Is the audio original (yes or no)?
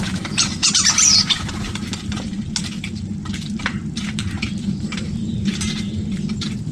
no